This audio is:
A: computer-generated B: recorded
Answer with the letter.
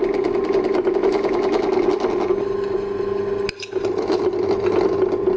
B